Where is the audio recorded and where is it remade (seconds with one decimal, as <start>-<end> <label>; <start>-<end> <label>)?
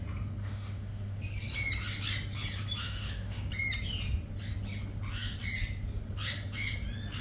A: 0.0-0.4 recorded; 0.4-1.2 remade; 1.2-2.8 recorded; 2.8-3.4 remade; 3.4-7.2 recorded